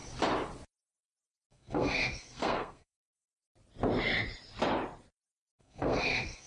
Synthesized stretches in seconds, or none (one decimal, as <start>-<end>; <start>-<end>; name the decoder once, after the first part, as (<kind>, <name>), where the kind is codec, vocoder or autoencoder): 1.5-3.3 (codec, SNAC); 5.6-6.5